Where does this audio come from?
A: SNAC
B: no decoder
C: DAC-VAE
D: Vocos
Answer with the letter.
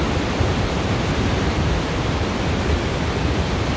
B